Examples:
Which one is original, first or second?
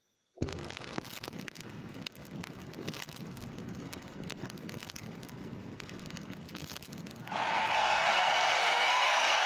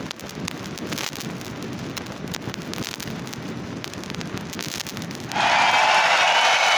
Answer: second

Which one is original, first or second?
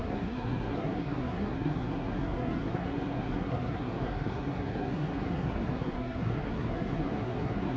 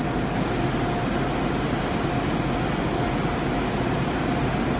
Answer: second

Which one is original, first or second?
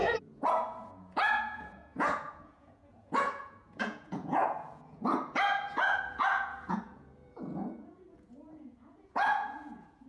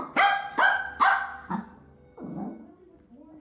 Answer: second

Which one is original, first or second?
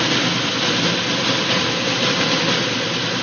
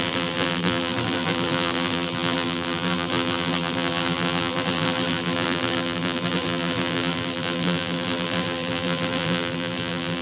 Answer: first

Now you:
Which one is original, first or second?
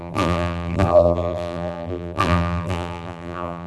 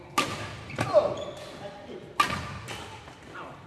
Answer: second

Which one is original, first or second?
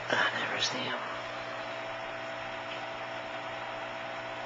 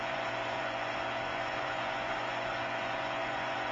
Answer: first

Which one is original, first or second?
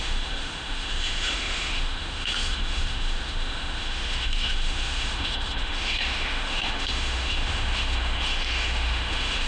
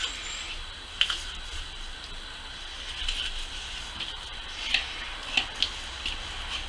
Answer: second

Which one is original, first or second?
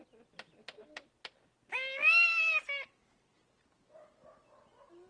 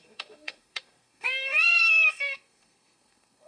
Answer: first